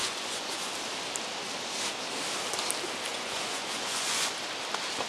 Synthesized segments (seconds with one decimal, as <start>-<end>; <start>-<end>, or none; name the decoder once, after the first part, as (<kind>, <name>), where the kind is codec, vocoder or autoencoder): 0.0-0.7 (vocoder, Vocos); 3.1-4.3

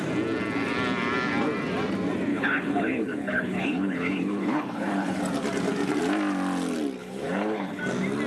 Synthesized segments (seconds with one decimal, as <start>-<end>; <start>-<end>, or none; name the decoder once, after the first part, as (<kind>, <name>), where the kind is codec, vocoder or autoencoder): 2.3-5.2 (codec, HILCodec); 7.0-7.8

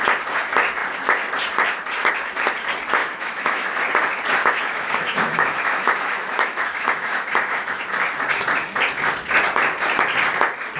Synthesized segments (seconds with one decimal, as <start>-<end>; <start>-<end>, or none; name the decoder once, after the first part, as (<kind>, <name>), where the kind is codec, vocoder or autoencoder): 3.0-3.8 (autoencoder, DAC-VAE); 4.4-7.8

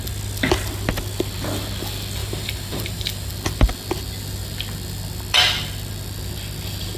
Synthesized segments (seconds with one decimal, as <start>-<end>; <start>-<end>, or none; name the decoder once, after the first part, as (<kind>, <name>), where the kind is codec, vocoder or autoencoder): 2.2-3.3 (vocoder, BigVGAN v2)